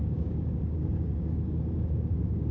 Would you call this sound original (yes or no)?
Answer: no